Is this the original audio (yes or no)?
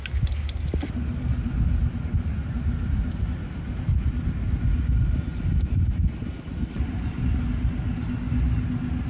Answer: yes